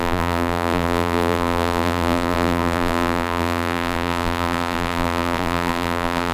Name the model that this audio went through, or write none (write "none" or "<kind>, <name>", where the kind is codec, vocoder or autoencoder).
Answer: vocoder, BigVGAN v2